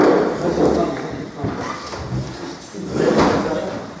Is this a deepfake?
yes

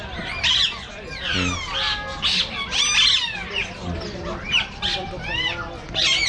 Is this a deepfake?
no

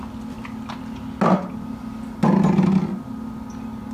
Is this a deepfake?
no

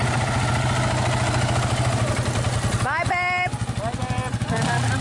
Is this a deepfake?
no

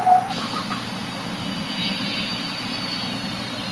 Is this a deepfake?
no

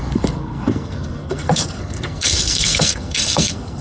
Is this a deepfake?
yes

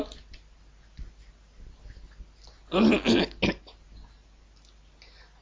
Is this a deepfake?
no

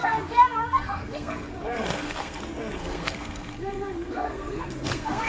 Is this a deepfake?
yes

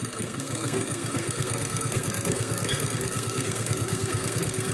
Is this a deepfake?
yes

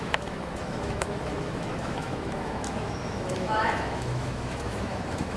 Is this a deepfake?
yes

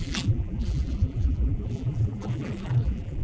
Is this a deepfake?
yes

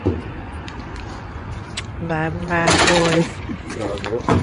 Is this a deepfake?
yes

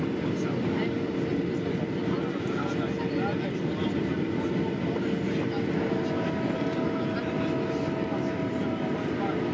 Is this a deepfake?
no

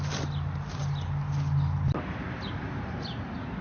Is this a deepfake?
no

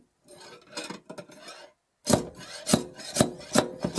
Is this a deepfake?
no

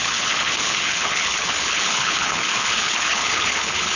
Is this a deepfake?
yes